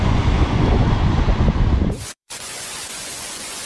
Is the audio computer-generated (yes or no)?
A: yes